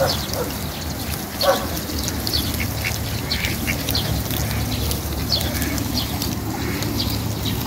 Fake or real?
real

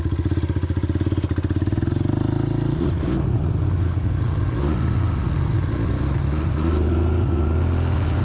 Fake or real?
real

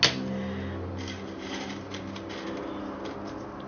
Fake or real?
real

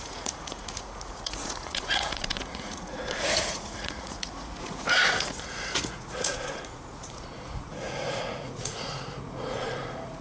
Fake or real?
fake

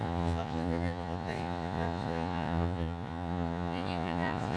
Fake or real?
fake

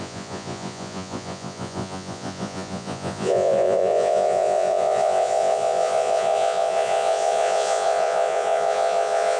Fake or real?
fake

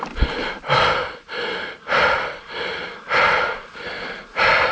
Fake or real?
real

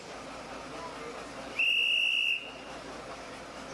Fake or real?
real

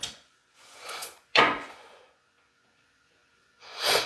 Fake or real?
fake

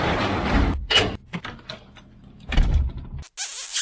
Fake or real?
real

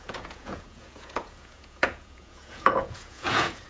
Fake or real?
fake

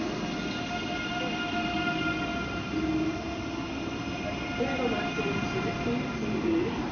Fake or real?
real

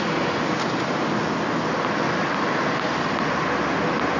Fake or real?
real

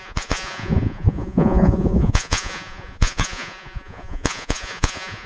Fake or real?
fake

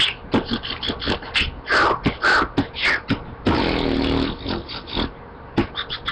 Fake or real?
real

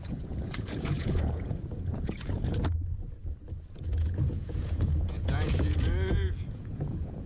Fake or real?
fake